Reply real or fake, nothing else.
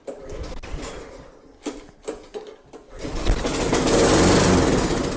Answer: real